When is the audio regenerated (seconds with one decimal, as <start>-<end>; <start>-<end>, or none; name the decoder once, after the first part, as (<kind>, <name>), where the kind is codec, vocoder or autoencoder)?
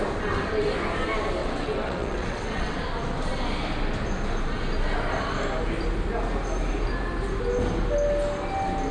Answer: 1.4-2.8 (vocoder, WaveNeXt)